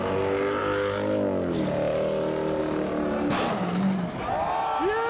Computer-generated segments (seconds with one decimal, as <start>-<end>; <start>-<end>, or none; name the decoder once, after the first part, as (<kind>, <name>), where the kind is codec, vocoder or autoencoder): none